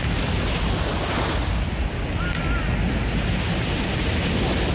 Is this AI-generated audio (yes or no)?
no